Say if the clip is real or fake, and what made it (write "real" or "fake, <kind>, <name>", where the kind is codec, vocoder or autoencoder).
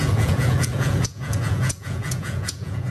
fake, vocoder, Vocos